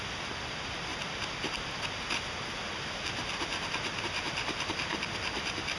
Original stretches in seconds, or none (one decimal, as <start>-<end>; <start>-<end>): 0.0-5.8